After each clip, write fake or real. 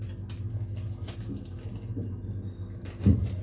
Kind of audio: real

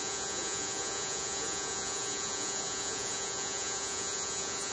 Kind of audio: fake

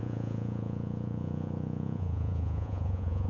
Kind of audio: fake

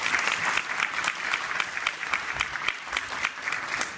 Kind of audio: real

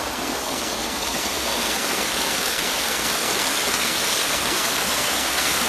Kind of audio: fake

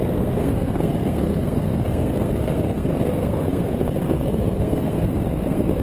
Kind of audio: fake